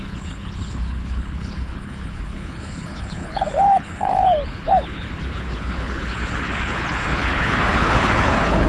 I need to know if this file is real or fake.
fake